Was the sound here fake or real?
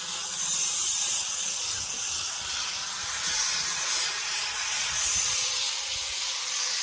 fake